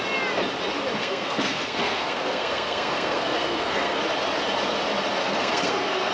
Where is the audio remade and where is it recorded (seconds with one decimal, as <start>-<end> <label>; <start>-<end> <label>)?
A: 0.0-1.0 recorded; 1.0-4.0 remade; 4.0-5.2 recorded; 5.2-6.1 remade